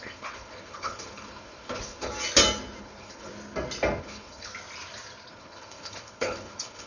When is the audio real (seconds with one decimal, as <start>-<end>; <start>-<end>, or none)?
2.1-2.8; 3.3-4.0; 4.5-5.3